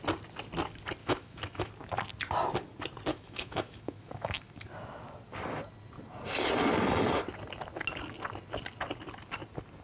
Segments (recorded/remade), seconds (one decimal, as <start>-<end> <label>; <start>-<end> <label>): 0.0-1.0 recorded; 1.0-1.7 remade; 1.7-3.1 recorded; 3.1-4.6 remade; 4.6-9.8 recorded